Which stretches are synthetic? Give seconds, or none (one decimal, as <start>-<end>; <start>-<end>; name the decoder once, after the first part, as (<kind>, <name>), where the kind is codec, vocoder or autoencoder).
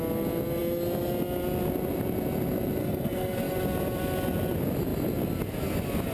2.8-3.5 (codec, SNAC)